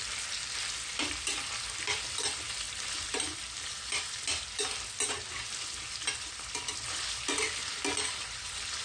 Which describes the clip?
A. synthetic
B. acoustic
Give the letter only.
B